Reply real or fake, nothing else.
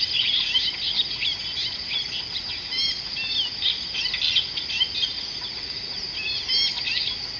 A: real